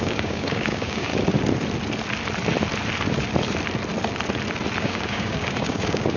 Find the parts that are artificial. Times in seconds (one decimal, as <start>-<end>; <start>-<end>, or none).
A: 0.0-1.1; 4.8-6.2